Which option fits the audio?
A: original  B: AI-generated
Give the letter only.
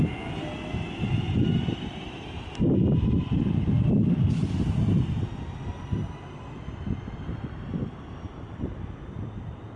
A